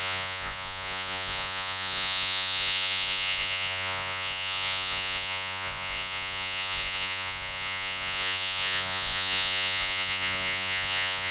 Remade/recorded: remade